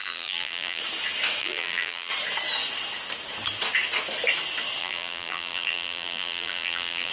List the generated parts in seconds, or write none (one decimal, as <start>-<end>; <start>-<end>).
0.0-0.8; 1.4-2.1; 4.8-7.1